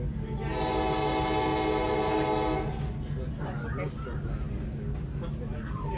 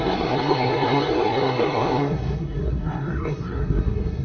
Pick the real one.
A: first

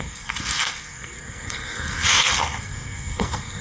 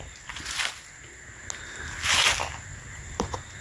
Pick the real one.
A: second